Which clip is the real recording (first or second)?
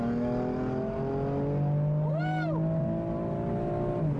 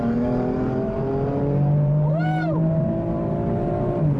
first